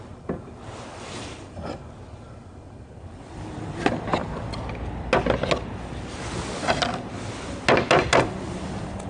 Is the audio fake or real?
real